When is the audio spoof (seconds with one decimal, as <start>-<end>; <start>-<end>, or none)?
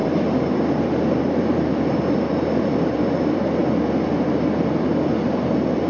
0.0-3.6; 4.9-5.9